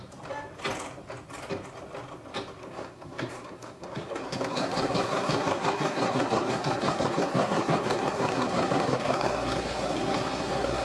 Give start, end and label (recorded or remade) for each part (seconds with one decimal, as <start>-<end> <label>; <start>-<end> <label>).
0.0-2.6 recorded; 2.6-10.8 remade